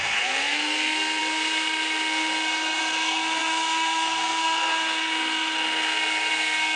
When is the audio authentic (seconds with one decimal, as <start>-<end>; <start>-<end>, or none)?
none